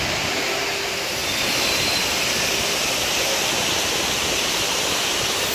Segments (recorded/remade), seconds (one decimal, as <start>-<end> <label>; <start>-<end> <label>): 0.0-5.5 recorded